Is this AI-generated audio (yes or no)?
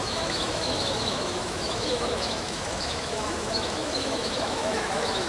yes